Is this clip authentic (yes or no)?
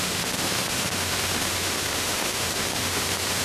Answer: no